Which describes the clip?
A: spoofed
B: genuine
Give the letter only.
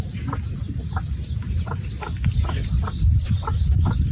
B